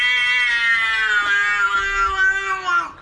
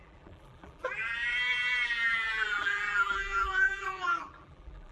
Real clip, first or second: first